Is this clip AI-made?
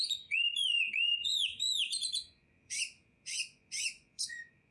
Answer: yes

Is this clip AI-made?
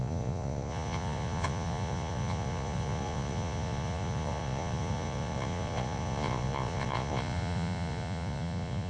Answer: yes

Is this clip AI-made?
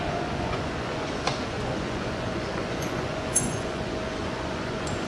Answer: yes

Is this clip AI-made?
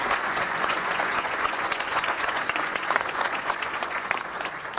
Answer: yes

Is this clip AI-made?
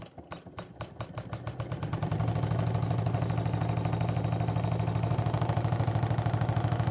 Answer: no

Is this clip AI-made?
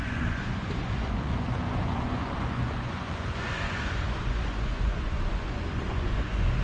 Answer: yes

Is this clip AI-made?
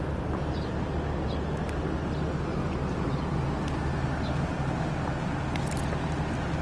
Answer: no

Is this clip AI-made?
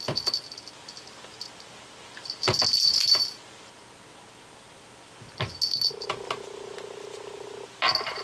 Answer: no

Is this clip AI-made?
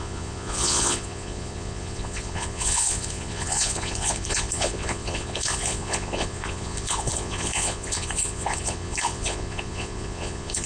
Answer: yes